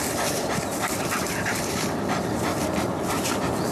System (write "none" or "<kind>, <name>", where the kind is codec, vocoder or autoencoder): vocoder, BigVGAN v2